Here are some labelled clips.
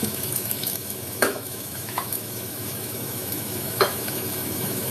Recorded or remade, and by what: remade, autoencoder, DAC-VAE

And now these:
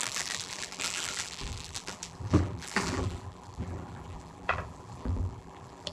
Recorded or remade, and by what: remade, vocoder, BigVGAN v2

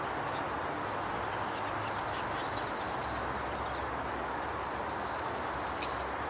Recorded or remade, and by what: recorded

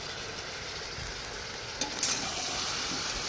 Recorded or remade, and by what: recorded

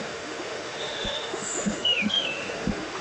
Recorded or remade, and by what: remade, autoencoder, DAC-VAE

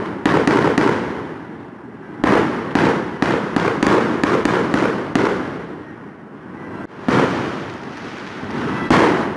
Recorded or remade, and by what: recorded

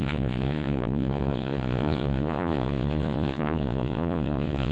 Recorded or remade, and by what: remade, vocoder, Vocos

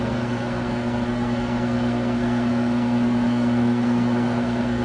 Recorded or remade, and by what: remade, codec, SNAC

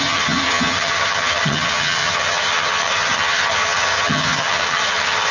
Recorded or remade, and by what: remade, vocoder, HiFi-GAN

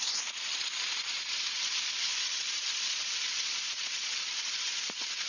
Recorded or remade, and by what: remade, vocoder, Vocos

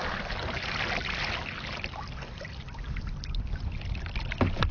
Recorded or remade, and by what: recorded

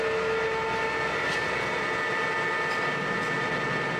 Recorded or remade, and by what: recorded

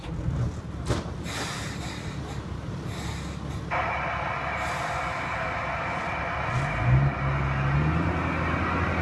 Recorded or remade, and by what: recorded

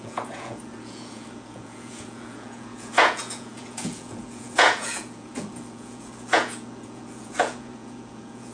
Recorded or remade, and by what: remade, vocoder, Vocos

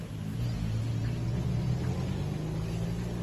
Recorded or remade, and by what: recorded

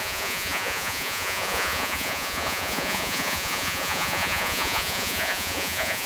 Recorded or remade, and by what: remade, vocoder, Vocos